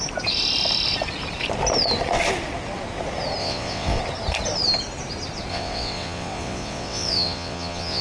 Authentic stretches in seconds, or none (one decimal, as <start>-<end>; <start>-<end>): 0.0-3.4; 4.0-5.5